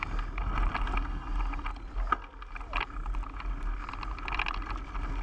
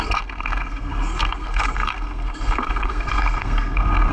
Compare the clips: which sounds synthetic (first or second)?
second